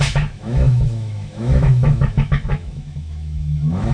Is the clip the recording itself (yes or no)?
no